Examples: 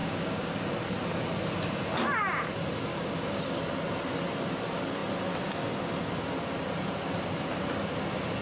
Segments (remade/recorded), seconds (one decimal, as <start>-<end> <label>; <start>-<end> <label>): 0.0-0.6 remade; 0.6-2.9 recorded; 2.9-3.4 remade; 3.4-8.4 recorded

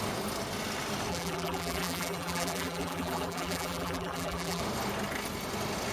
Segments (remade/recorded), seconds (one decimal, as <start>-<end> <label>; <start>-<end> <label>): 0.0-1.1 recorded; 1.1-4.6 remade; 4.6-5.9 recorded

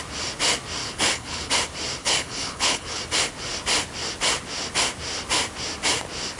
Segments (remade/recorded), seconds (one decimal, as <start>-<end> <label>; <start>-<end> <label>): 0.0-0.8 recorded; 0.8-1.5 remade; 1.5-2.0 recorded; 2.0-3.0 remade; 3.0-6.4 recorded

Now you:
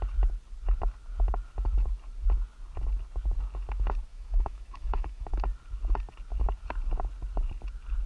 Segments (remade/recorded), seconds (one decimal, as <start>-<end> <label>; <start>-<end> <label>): 0.0-4.1 recorded; 4.1-5.4 remade; 5.4-8.1 recorded

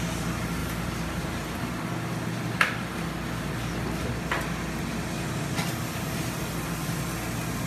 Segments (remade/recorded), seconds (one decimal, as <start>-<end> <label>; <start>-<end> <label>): 0.0-0.6 recorded; 0.6-1.8 remade; 1.8-7.7 recorded